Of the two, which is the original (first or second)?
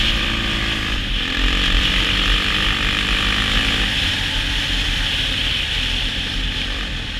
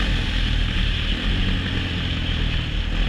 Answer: second